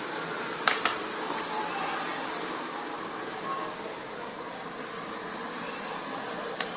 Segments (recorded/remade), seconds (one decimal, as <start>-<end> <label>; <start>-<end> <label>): 0.0-6.8 recorded